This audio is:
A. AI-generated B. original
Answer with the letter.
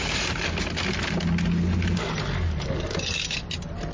B